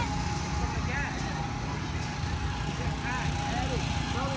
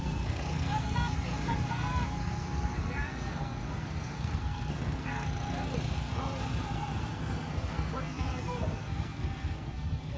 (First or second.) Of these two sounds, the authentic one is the first